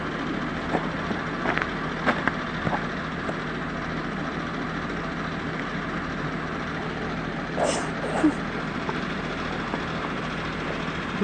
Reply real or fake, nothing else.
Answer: real